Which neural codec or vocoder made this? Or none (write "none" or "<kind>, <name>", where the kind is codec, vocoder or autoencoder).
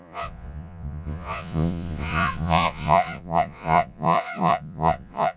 vocoder, Vocos